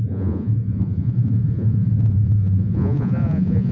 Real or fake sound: fake